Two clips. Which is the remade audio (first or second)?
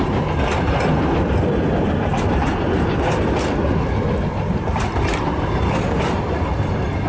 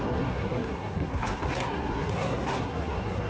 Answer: second